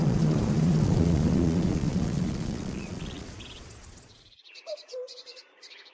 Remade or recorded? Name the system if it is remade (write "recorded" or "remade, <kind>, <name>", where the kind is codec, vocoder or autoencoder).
remade, vocoder, Vocos